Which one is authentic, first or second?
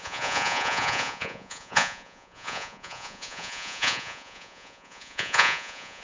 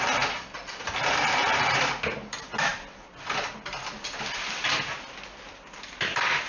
second